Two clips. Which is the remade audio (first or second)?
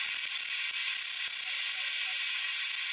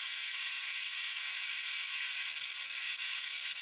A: second